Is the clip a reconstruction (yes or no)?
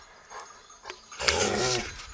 no